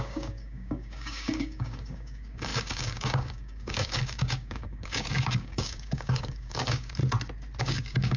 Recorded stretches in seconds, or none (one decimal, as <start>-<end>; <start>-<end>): 7.0-7.6